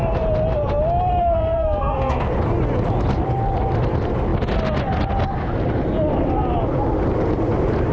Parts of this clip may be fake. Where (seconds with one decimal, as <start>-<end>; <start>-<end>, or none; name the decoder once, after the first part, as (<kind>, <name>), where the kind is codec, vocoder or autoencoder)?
1.2-2.2 (codec, SNAC)